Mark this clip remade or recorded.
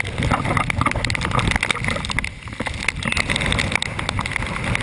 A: recorded